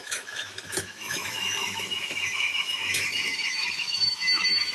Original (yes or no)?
no